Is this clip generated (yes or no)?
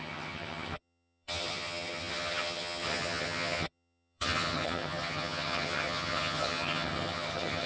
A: yes